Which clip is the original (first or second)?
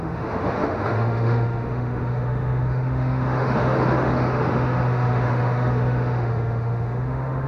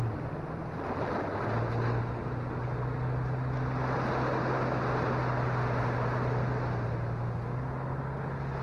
second